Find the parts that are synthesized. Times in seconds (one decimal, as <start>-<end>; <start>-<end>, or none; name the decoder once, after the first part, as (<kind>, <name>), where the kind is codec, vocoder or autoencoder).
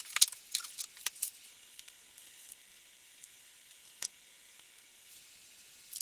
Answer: 1.5-5.1 (codec, SNAC)